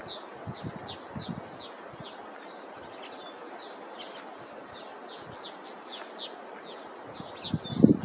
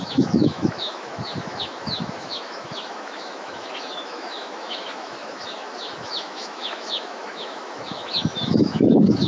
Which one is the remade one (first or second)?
second